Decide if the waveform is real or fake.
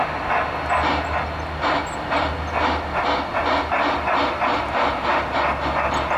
real